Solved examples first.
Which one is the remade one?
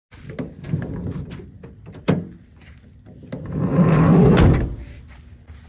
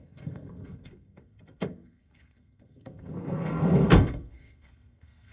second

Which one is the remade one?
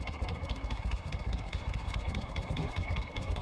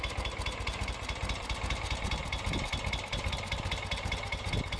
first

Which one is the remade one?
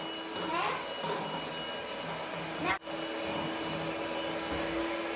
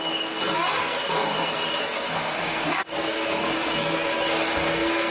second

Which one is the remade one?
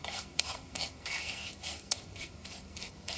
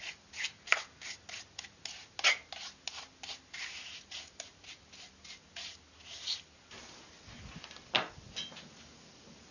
first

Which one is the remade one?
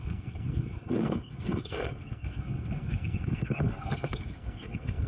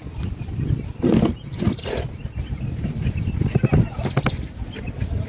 first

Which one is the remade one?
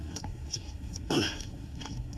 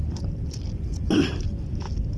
first